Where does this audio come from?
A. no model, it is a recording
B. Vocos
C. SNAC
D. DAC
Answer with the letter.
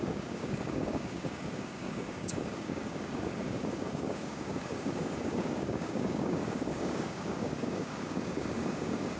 D